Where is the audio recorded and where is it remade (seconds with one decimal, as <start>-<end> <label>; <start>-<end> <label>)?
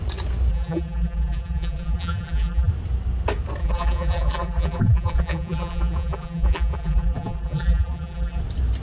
0.0-0.5 recorded; 0.5-2.7 remade; 2.7-3.6 recorded; 3.6-8.4 remade; 8.4-8.8 recorded